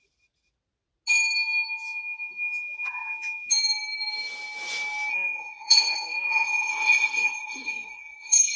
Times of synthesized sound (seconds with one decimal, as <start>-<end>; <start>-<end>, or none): 5.1-8.6